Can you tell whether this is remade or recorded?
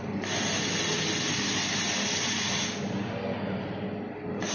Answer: recorded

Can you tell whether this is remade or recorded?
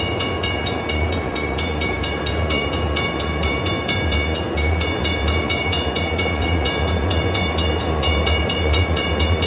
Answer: remade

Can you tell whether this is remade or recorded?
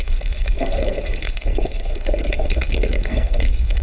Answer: remade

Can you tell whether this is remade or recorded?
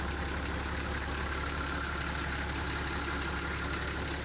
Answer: remade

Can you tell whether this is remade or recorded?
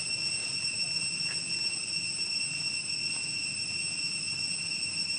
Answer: recorded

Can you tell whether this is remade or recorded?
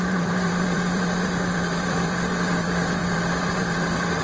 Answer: remade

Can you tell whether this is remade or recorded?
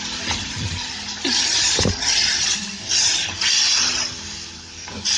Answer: recorded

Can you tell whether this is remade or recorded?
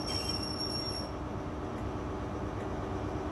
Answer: recorded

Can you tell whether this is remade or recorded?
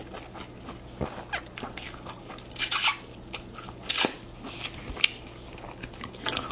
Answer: recorded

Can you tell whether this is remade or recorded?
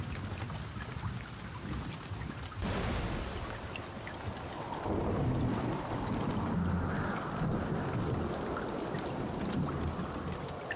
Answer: recorded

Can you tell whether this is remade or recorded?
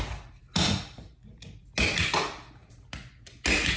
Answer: recorded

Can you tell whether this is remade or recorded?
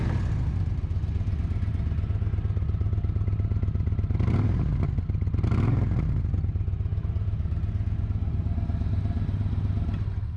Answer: recorded